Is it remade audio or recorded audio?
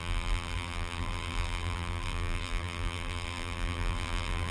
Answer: remade